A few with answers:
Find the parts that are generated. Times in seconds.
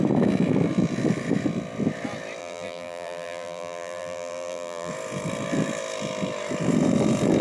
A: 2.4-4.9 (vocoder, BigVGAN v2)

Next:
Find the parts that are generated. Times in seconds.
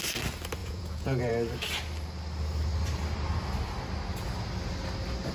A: 0.6-1.3 (vocoder, Vocos)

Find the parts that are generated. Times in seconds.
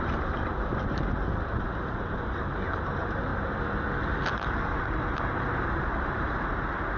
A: 0.0-0.7 (vocoder, BigVGAN v2); 1.5-3.3; 4.3-7.0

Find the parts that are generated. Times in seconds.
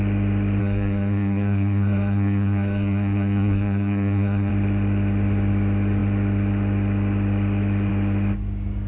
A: 0.6-4.5 (codec, SNAC)